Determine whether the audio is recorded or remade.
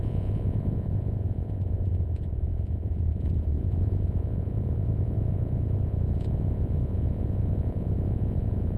remade